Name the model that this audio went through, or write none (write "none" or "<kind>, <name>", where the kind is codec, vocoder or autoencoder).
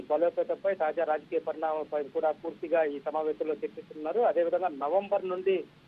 none